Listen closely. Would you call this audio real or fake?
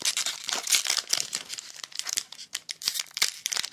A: fake